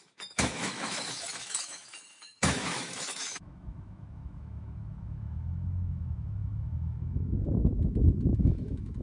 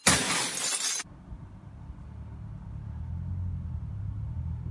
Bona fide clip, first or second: second